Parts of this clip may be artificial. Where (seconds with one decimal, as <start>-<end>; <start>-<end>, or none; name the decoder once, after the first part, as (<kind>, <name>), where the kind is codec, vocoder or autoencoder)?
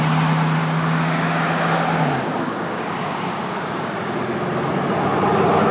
0.6-3.9 (codec, DAC)